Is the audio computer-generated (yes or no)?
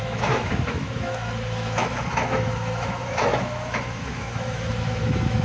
yes